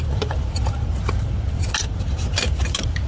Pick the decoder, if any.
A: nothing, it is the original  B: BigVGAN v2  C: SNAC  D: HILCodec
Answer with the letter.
B